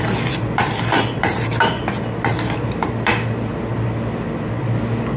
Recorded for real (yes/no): no